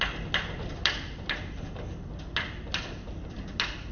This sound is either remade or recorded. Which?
recorded